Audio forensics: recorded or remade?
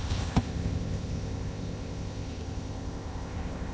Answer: remade